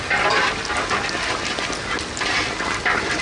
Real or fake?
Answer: real